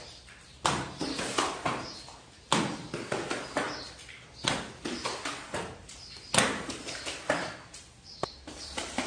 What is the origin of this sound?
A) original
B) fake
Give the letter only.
A